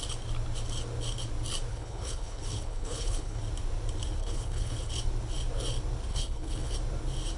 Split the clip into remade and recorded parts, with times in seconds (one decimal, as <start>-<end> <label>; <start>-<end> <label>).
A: 0.0-1.7 recorded; 1.7-3.4 remade; 3.4-4.2 recorded; 4.2-4.9 remade; 4.9-6.1 recorded; 6.1-6.7 remade; 6.7-7.4 recorded